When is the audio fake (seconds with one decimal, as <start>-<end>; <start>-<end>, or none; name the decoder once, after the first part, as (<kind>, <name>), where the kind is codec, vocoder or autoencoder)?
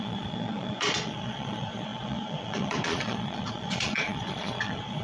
0.0-5.0 (vocoder, Vocos)